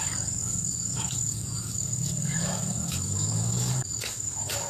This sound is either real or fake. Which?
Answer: fake